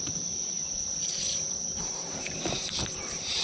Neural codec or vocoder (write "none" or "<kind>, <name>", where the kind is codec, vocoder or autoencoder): vocoder, BigVGAN v2